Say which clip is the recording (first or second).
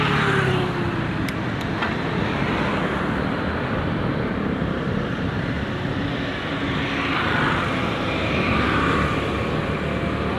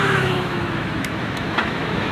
first